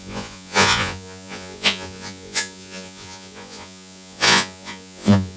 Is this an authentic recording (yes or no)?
no